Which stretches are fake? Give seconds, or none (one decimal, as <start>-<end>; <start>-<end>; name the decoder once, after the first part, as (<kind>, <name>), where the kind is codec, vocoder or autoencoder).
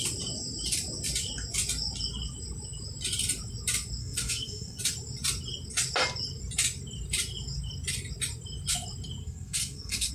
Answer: 4.0-4.8 (codec, SNAC); 9.2-10.1